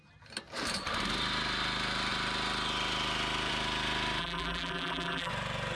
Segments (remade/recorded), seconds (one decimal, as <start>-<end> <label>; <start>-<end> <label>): 0.0-4.2 recorded; 4.2-5.3 remade; 5.3-5.8 recorded